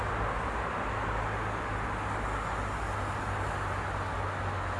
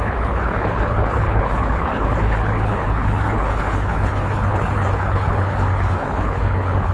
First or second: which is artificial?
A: second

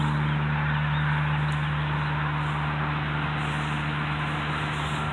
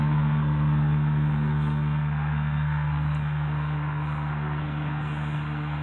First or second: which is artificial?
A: second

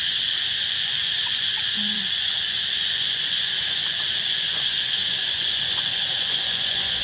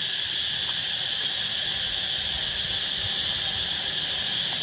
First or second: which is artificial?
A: first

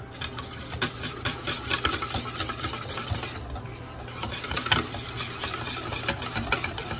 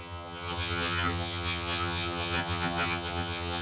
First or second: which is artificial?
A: second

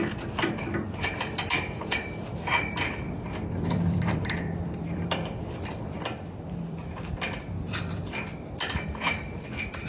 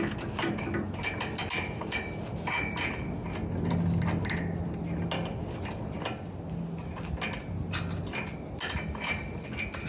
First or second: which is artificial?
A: first